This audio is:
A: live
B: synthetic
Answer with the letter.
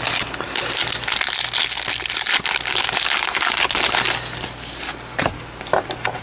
A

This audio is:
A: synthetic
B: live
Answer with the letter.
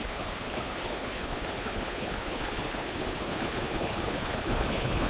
A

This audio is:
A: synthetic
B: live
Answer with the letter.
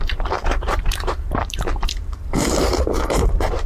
A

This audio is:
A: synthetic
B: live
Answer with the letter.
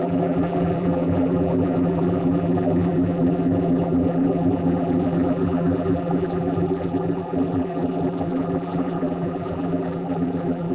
A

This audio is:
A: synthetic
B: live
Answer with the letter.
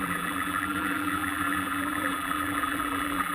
A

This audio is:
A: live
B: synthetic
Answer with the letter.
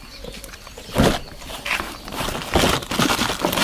A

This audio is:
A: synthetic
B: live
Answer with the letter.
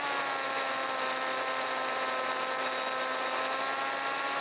B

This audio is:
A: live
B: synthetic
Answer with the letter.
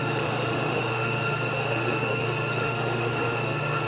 B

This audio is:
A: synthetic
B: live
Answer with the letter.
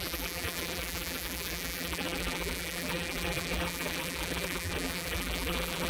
A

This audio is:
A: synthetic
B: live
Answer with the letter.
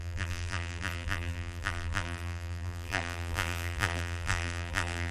A